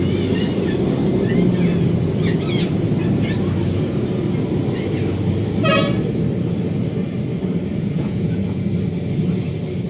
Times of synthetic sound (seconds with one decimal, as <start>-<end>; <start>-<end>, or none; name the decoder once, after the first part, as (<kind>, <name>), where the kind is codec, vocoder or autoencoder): 7.7-8.6 (vocoder, Vocos)